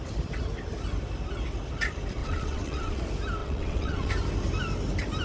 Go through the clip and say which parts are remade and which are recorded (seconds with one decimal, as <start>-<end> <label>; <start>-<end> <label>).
0.0-2.2 recorded; 2.2-3.0 remade; 3.0-3.4 recorded; 3.4-4.1 remade; 4.1-5.2 recorded